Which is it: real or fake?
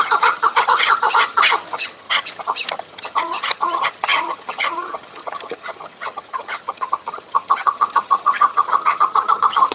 fake